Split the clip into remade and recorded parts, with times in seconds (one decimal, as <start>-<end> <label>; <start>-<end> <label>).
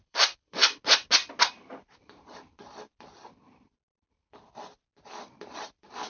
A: 0.0-0.6 remade; 0.6-1.5 recorded; 1.5-6.1 remade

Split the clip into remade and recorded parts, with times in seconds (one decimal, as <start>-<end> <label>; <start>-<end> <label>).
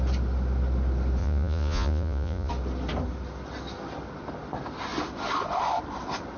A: 0.0-1.2 recorded; 1.2-2.5 remade; 2.5-6.4 recorded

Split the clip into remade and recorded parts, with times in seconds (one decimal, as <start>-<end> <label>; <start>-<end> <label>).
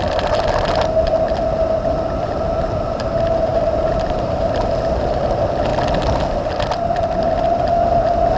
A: 0.0-3.5 recorded; 3.5-5.2 remade; 5.2-8.4 recorded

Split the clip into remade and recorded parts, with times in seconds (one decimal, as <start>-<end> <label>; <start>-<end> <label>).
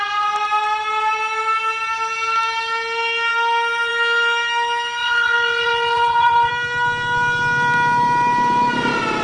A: 0.0-5.0 recorded; 5.0-6.5 remade; 6.5-9.2 recorded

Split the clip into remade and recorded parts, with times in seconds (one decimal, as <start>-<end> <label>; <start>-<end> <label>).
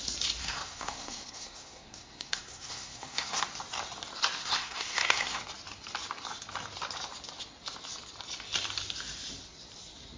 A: 0.0-0.4 recorded; 0.4-3.4 remade; 3.4-4.4 recorded; 4.4-5.4 remade; 5.4-10.2 recorded